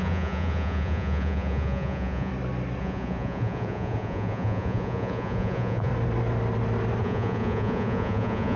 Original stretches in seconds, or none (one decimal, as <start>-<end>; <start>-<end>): 2.3-2.8; 5.9-7.0